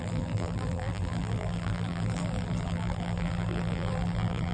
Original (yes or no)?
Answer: no